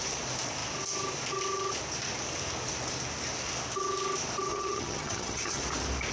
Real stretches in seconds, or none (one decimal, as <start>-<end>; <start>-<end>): 0.0-4.5; 5.6-6.1